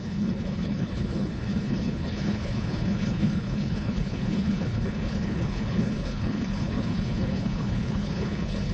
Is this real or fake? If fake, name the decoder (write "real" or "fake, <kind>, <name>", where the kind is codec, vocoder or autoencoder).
fake, codec, HILCodec